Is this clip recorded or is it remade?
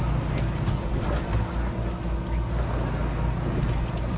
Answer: recorded